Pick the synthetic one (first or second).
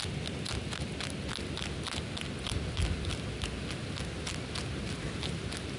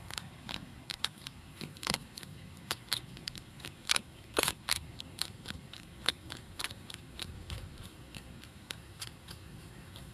second